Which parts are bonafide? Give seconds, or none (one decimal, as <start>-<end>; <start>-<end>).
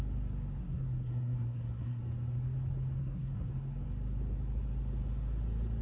0.0-0.6; 2.0-3.0; 3.5-5.8